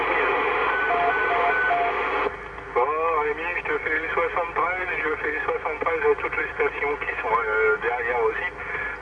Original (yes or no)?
yes